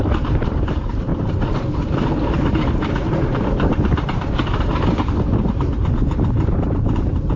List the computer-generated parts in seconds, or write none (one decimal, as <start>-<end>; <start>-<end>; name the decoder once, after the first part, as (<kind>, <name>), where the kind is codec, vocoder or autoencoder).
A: 0.0-4.7 (vocoder, BigVGAN v2); 5.5-7.4